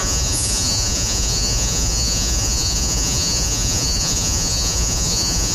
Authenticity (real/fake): fake